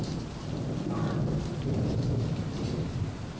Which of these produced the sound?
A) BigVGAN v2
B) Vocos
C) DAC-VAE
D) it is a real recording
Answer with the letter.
D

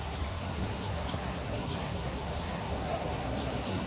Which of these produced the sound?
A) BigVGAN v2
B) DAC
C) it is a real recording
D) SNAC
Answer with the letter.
D